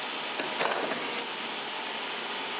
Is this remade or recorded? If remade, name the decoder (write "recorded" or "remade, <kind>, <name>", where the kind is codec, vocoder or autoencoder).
recorded